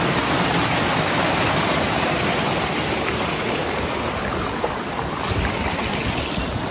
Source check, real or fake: real